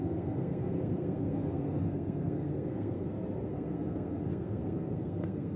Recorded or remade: remade